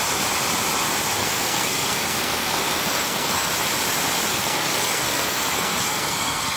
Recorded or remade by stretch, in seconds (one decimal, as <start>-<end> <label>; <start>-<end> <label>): 0.0-1.2 recorded; 1.2-3.5 remade; 3.5-4.3 recorded; 4.3-6.6 remade